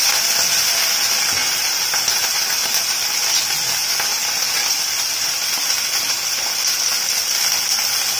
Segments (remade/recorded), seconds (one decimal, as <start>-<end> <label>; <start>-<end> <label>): 0.0-1.4 recorded; 1.4-3.0 remade; 3.0-3.8 recorded; 3.8-5.3 remade; 5.3-8.2 recorded